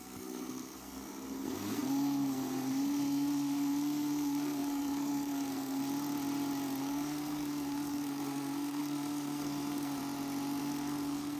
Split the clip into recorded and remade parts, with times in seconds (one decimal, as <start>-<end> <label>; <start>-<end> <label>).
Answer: 0.0-5.8 remade; 5.8-6.8 recorded; 6.8-10.0 remade; 10.0-10.6 recorded; 10.6-11.4 remade